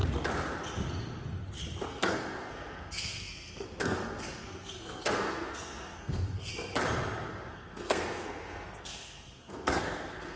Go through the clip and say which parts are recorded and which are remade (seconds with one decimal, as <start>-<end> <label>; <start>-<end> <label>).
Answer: 0.0-1.9 recorded; 1.9-6.5 remade; 6.5-7.3 recorded; 7.3-10.4 remade